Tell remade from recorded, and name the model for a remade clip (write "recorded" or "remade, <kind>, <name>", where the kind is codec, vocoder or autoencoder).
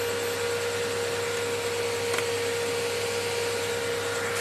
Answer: recorded